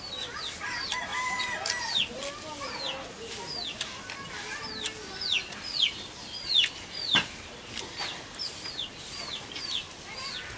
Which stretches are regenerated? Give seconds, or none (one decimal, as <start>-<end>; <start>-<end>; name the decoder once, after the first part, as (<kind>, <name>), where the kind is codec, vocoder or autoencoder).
none